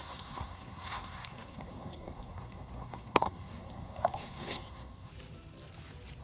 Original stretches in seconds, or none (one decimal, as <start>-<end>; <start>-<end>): 5.1-6.2